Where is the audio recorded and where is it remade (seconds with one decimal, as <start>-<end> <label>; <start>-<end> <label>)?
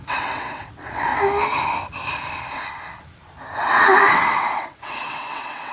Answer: 0.0-1.1 remade; 1.1-3.7 recorded; 3.7-5.7 remade